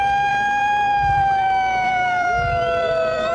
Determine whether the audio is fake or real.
fake